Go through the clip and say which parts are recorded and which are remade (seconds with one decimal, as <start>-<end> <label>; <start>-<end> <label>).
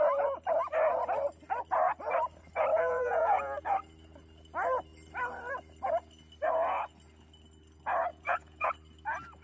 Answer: 0.0-2.7 recorded; 2.7-3.4 remade; 3.4-8.1 recorded; 8.1-8.7 remade; 8.7-9.4 recorded